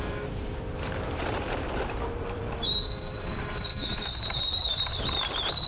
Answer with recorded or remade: remade